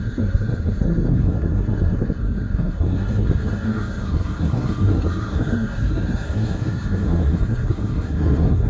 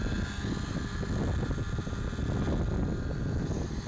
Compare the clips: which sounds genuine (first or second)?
second